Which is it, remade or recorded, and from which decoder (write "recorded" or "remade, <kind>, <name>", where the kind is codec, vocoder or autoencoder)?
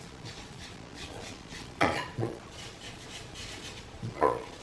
remade, vocoder, Vocos